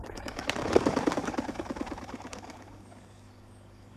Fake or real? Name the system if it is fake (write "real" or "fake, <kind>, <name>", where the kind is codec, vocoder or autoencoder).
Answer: fake, codec, DAC